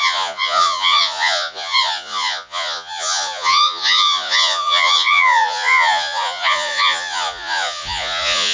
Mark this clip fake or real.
fake